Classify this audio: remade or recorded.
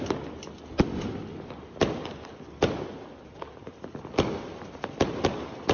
recorded